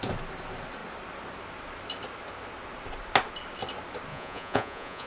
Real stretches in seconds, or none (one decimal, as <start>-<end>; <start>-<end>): 0.0-4.1